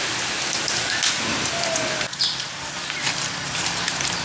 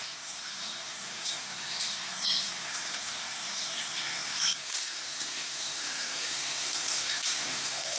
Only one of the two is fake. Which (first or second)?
second